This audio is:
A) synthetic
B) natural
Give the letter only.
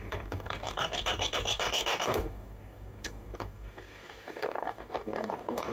A